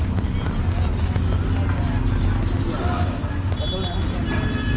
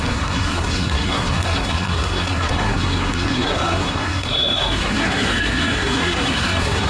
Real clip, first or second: first